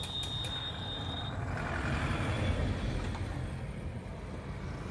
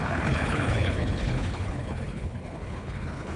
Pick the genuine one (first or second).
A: first